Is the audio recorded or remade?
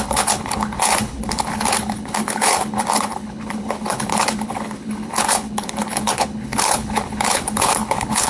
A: remade